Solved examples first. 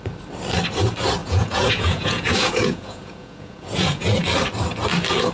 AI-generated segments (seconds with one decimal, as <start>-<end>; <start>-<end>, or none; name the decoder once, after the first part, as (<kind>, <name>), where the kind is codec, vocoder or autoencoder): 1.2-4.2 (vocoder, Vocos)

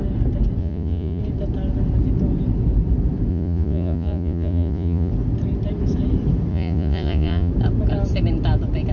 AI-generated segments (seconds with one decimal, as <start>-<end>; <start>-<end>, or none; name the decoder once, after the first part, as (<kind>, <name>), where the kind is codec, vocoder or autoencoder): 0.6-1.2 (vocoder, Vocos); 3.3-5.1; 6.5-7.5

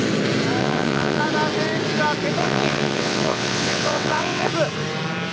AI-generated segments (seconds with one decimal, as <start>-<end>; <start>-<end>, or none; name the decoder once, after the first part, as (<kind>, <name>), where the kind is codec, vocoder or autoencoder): 0.6-1.2 (vocoder, WaveNeXt); 2.4-4.5

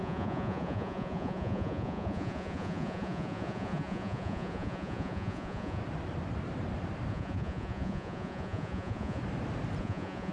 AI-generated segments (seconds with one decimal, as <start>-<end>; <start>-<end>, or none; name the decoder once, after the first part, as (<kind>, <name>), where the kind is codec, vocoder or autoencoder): 0.0-5.8 (vocoder, Vocos); 7.1-9.2; 9.8-10.3